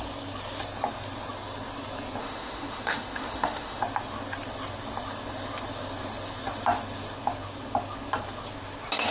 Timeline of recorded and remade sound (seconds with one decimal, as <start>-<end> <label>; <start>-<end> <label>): 0.0-2.2 recorded; 2.2-3.8 remade; 3.8-9.1 recorded